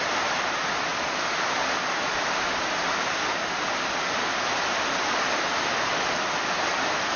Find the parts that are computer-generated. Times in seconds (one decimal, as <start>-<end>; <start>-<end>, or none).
none